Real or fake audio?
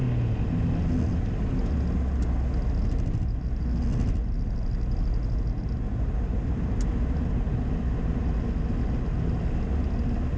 real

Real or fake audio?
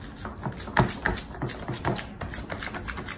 real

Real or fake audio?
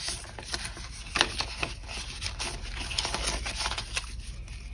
real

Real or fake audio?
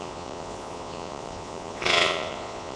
fake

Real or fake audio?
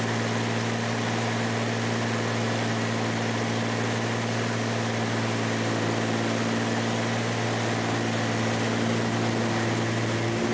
real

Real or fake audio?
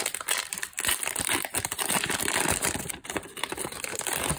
fake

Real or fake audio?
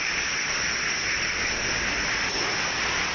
real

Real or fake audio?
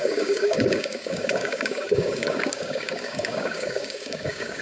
fake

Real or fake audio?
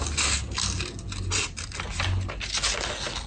real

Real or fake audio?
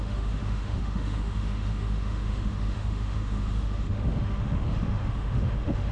fake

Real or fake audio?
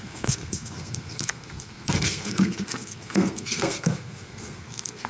fake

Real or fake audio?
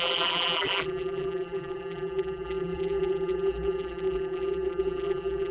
fake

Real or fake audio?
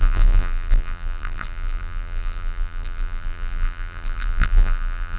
fake